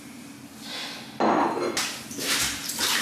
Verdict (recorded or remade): recorded